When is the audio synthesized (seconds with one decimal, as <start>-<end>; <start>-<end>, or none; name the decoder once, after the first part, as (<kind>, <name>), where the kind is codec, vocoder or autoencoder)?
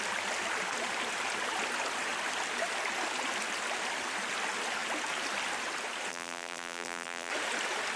6.1-7.3 (vocoder, BigVGAN v2)